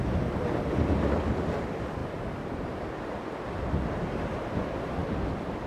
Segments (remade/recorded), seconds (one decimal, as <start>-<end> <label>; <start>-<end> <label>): 0.0-5.0 remade; 5.0-5.7 recorded